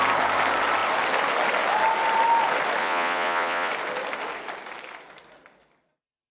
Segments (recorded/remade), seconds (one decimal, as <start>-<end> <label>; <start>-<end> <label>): 0.0-2.8 recorded; 2.8-3.7 remade; 3.7-6.3 recorded